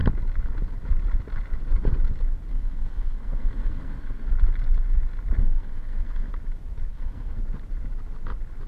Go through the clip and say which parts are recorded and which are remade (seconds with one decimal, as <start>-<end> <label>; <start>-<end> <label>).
0.0-2.5 recorded; 2.5-4.3 remade; 4.3-5.4 recorded; 5.4-6.3 remade; 6.3-6.9 recorded; 6.9-7.4 remade; 7.4-8.7 recorded